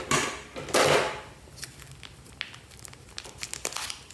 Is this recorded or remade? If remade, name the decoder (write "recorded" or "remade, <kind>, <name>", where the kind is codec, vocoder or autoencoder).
recorded